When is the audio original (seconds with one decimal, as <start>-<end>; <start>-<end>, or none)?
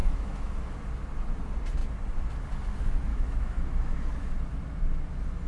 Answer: 0.5-3.1; 4.3-5.5